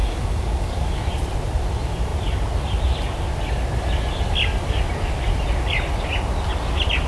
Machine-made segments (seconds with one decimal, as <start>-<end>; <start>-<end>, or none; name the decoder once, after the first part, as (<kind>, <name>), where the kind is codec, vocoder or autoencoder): 0.0-1.1 (codec, DAC)